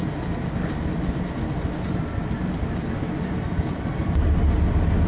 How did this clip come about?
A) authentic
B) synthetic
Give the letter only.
A